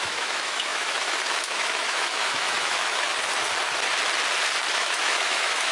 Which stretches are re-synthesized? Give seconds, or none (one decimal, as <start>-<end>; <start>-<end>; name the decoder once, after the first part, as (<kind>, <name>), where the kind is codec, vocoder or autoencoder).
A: 0.0-3.1 (autoencoder, DAC-VAE); 4.7-5.7

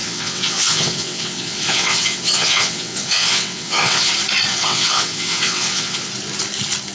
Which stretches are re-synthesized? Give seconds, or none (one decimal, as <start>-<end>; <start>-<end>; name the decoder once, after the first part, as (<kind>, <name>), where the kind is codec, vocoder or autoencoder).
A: 0.0-4.1 (vocoder, WaveNeXt); 4.5-6.1

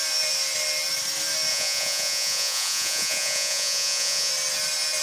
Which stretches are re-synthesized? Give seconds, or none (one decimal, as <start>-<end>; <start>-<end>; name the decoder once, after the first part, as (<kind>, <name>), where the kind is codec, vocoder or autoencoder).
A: 1.5-4.3 (vocoder, Vocos)

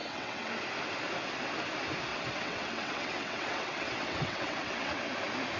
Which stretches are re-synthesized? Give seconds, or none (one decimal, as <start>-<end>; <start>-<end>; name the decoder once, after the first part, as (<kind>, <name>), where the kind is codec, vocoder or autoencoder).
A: 0.0-0.6 (vocoder, WaveNeXt); 2.1-5.1

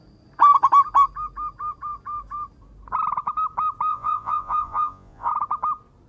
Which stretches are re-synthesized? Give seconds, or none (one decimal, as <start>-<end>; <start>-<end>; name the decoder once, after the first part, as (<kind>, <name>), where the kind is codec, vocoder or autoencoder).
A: 3.9-5.3 (vocoder, Vocos)